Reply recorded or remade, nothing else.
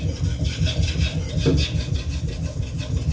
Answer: recorded